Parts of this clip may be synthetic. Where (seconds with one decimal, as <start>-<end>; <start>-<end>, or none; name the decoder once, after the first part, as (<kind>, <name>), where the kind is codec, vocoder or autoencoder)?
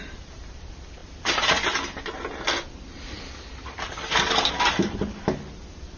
none